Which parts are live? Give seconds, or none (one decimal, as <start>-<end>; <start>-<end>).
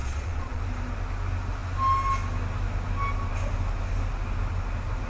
0.6-5.1